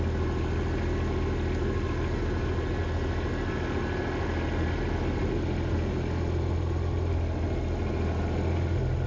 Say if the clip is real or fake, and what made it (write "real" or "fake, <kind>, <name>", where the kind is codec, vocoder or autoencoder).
real